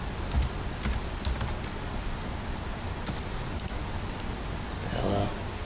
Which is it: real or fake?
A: real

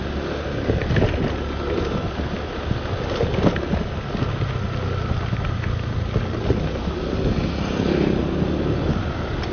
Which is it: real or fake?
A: real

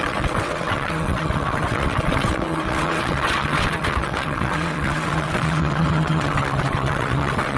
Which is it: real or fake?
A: fake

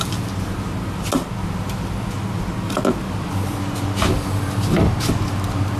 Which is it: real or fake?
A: real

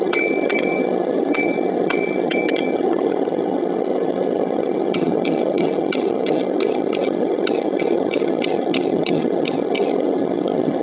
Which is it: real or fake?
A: fake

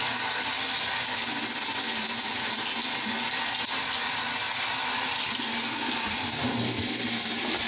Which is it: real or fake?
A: real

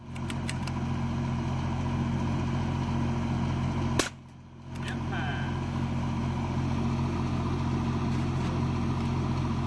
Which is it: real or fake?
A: real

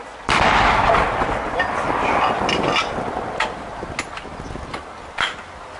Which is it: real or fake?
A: real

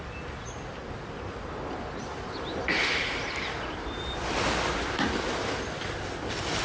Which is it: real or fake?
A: real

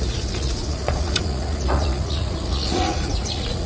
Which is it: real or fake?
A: fake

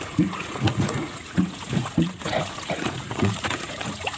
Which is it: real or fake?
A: fake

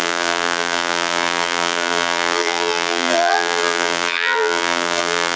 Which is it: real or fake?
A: fake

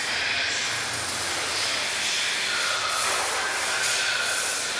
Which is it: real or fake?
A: real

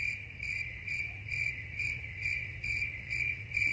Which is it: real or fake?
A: fake